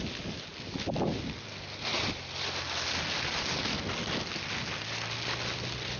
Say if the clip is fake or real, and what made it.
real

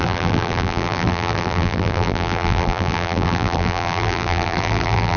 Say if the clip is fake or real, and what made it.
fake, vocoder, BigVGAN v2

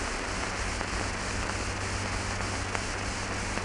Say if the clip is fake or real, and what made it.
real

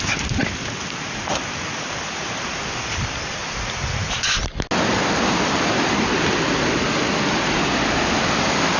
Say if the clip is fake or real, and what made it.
real